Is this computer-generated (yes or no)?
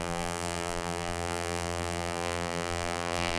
yes